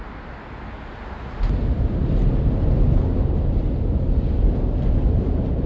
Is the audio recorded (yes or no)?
yes